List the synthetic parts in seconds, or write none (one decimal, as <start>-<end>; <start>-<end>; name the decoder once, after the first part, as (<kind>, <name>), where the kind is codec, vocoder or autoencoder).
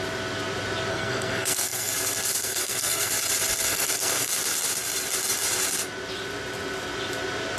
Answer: 0.9-1.9 (codec, SNAC); 2.4-3.1; 3.7-4.3